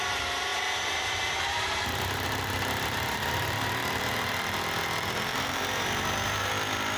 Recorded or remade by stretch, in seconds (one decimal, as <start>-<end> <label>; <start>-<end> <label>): 0.0-0.5 recorded; 0.5-4.0 remade; 4.0-5.3 recorded; 5.3-6.5 remade; 6.5-7.0 recorded